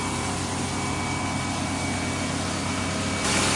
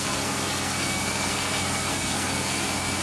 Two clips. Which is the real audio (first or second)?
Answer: first